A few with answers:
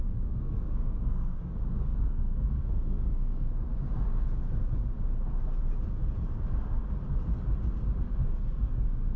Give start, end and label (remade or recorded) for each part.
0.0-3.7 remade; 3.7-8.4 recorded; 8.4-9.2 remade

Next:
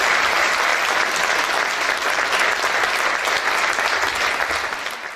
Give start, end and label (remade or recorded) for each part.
0.0-5.2 recorded

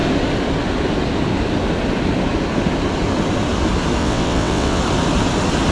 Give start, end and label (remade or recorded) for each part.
0.0-4.0 recorded; 4.0-4.8 remade; 4.8-5.7 recorded